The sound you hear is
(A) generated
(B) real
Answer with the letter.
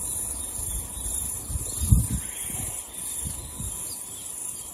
B